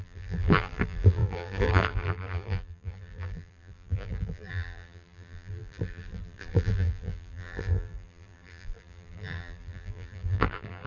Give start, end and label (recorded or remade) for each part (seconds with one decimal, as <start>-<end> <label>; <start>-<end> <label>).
0.0-10.9 remade